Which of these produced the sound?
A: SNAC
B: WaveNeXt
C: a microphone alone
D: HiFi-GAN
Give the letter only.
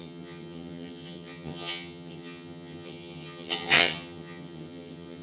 D